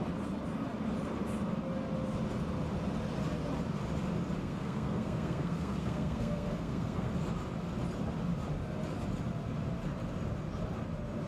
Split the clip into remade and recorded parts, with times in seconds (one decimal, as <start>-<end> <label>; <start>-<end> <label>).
0.0-4.4 recorded; 4.4-7.1 remade; 7.1-11.3 recorded